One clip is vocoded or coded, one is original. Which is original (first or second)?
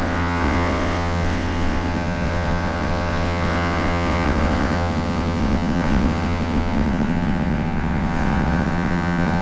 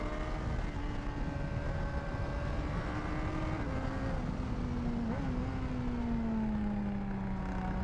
second